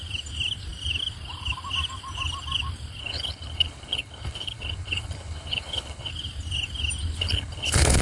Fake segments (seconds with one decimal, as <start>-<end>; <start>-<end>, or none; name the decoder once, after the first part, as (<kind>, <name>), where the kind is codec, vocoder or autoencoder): 3.0-6.1 (codec, HILCodec); 7.2-8.0